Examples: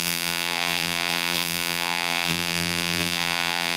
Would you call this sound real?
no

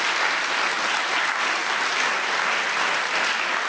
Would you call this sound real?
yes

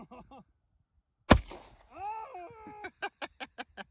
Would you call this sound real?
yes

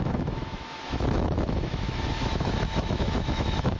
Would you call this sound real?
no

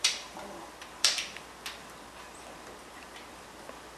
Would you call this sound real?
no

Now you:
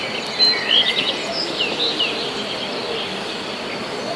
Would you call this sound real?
yes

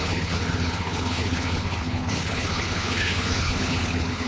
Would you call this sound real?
no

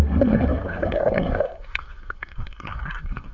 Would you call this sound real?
no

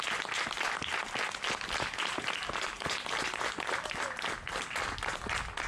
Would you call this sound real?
yes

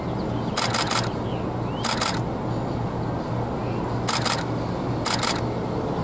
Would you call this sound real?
yes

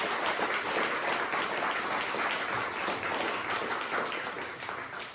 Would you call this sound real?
yes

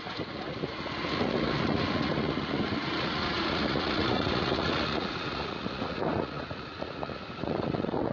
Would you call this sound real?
no